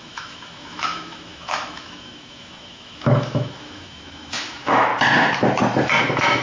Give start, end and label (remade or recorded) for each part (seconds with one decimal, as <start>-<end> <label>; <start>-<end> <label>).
0.0-4.9 remade; 4.9-6.0 recorded; 6.0-6.4 remade